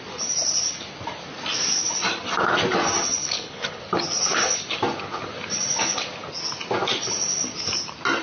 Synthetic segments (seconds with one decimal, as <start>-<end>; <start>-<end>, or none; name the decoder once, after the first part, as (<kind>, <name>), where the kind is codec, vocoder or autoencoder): 3.2-3.8 (codec, HILCodec)